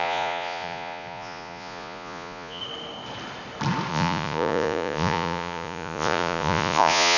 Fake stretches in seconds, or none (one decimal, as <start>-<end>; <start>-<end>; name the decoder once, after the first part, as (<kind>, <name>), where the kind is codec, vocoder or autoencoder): 0.0-2.6 (vocoder, Vocos); 3.9-7.2

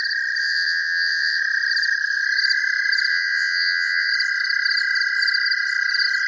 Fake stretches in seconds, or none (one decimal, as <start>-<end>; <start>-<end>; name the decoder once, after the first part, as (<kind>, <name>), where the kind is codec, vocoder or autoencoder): 0.4-1.4 (vocoder, Vocos); 3.1-4.1

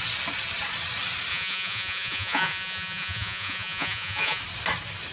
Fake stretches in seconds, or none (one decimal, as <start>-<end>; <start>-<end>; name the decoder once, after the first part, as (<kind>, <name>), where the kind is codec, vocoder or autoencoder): 1.3-4.4 (vocoder, Vocos)

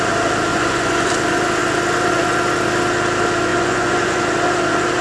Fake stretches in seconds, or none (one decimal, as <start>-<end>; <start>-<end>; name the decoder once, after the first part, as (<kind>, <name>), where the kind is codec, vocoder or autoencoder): 0.5-1.1 (vocoder, Vocos); 3.5-4.2

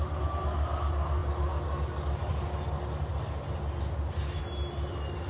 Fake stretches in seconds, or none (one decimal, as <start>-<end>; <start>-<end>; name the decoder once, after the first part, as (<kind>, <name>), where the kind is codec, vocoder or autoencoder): none

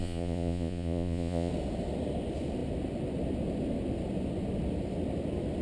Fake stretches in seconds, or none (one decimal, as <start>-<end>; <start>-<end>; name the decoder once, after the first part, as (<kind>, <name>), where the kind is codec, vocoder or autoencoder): 0.0-1.5 (vocoder, Vocos)